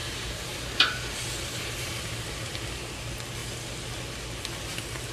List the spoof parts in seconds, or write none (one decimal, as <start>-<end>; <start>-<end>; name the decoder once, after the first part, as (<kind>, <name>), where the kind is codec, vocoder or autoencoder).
0.0-2.0 (vocoder, BigVGAN v2)